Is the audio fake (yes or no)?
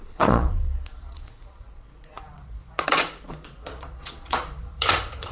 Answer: yes